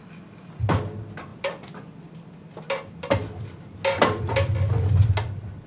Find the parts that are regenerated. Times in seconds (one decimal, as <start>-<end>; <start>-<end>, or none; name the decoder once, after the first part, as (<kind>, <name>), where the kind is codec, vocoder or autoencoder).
none